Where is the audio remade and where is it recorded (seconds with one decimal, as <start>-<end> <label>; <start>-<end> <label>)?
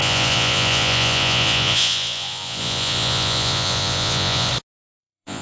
0.0-4.5 remade; 4.5-5.0 recorded; 5.0-5.4 remade